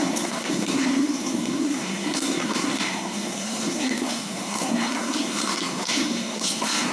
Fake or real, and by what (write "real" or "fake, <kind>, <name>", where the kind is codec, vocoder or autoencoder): fake, codec, SNAC